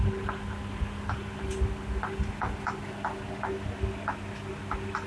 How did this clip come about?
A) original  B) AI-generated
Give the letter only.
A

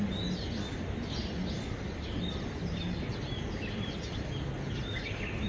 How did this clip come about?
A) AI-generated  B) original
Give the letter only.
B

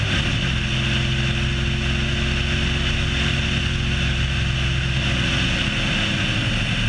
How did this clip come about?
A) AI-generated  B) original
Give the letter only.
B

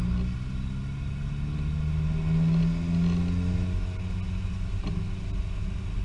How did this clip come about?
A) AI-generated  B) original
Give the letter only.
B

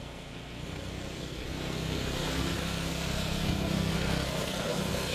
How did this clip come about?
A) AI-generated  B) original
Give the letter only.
A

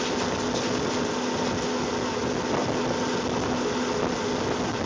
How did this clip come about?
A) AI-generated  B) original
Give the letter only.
B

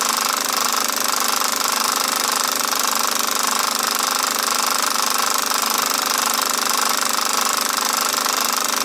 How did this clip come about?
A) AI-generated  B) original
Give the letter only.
B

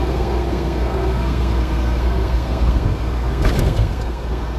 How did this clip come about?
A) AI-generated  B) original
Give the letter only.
A